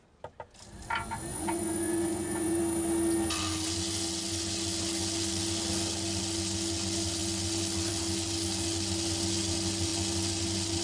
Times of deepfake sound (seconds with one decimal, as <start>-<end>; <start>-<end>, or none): 1.3-2.6